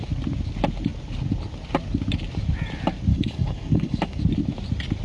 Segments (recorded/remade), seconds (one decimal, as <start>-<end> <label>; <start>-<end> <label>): 0.0-3.1 recorded; 3.1-4.2 remade; 4.2-5.0 recorded